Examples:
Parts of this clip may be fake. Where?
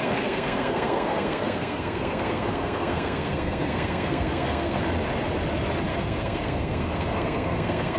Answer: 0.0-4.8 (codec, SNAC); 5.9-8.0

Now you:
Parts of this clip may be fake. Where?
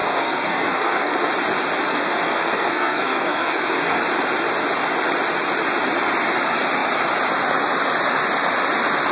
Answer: 0.0-1.3 (codec, SNAC); 1.9-4.0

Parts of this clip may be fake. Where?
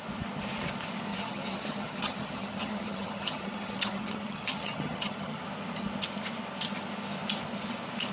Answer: 1.1-5.4 (vocoder, HiFi-GAN)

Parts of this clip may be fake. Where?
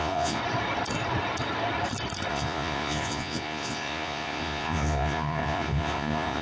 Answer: 0.0-0.4 (vocoder, Vocos); 2.3-6.4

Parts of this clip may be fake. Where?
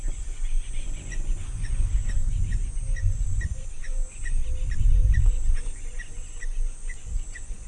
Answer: 0.0-4.4 (vocoder, Vocos); 5.2-7.7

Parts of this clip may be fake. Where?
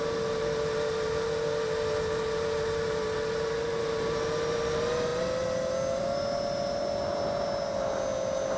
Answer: none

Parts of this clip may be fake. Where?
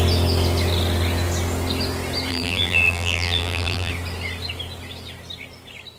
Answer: 2.3-3.9 (vocoder, BigVGAN v2)